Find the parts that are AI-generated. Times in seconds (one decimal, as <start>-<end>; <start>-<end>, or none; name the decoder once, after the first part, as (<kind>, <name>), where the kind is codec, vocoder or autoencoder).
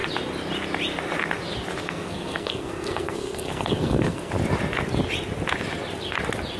1.8-4.3 (codec, SNAC)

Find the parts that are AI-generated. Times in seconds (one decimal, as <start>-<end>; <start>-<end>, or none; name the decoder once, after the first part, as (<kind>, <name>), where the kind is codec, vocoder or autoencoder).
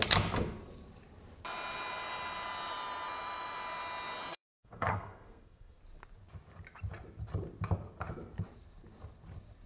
4.3-5.8 (codec, SNAC)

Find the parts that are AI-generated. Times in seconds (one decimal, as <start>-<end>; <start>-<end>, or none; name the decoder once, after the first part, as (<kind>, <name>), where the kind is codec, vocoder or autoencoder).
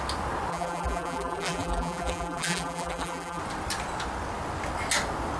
0.5-3.4 (vocoder, BigVGAN v2)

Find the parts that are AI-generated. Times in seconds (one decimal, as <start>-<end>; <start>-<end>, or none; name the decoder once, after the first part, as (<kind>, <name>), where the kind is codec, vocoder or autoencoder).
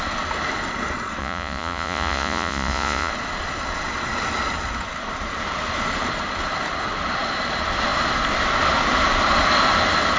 1.2-3.1 (vocoder, Vocos)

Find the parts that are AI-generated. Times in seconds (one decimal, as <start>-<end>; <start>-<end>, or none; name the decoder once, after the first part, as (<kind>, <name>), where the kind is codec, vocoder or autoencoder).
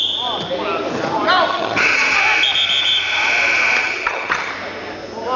1.5-2.2 (vocoder, HiFi-GAN); 3.8-4.5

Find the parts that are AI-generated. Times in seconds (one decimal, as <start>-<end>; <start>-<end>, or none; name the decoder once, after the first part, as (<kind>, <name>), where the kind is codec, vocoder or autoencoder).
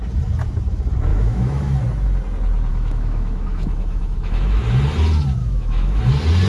1.1-1.8 (autoencoder, DAC-VAE); 2.7-4.6; 5.4-6.0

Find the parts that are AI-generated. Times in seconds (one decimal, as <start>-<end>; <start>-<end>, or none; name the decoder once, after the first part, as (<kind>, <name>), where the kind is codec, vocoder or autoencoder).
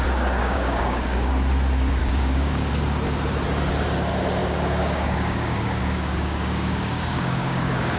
0.4-1.3 (codec, DAC); 2.0-2.7; 4.4-8.0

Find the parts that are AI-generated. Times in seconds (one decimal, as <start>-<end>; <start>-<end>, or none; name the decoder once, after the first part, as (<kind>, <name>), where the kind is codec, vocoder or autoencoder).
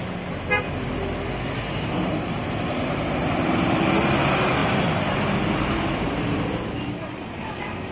4.6-7.1 (vocoder, BigVGAN v2)